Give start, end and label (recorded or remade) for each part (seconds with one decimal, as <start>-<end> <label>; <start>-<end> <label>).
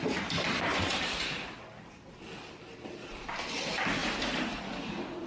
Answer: 0.0-0.7 recorded; 0.7-1.4 remade; 1.4-4.0 recorded; 4.0-4.6 remade; 4.6-5.3 recorded